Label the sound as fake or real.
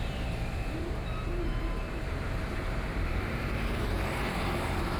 fake